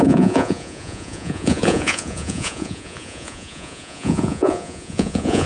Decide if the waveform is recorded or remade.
remade